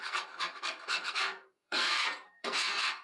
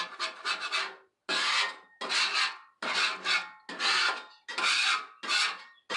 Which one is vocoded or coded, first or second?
first